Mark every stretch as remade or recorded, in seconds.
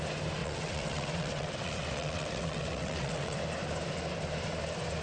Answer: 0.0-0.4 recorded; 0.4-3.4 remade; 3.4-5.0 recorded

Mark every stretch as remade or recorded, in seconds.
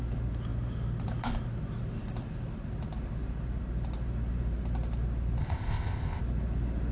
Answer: 0.0-5.4 recorded; 5.4-6.2 remade; 6.2-6.9 recorded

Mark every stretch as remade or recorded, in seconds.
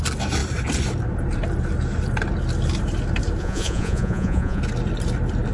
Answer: 0.0-3.4 recorded; 3.4-4.6 remade; 4.6-5.5 recorded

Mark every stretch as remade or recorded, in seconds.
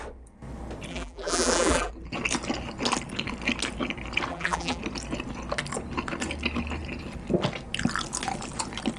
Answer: 0.0-0.9 recorded; 0.9-1.9 remade; 1.9-4.3 recorded; 4.3-4.8 remade; 4.8-9.0 recorded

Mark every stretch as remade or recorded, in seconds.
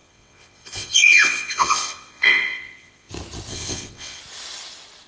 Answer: 0.0-3.1 remade; 3.1-3.5 recorded; 3.5-4.2 remade; 4.2-5.1 recorded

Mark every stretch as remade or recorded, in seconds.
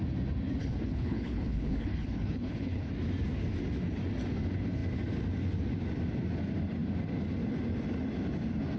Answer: 0.0-0.6 recorded; 0.6-2.9 remade; 2.9-8.8 recorded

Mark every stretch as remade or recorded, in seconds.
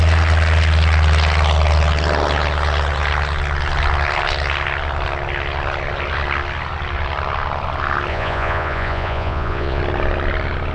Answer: 0.0-8.1 recorded; 8.1-9.8 remade; 9.8-10.7 recorded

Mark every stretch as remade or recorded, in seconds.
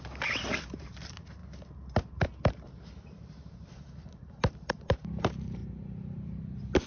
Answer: 0.0-5.6 remade; 5.6-6.9 recorded